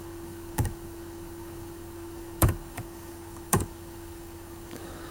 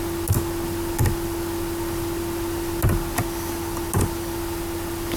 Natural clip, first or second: second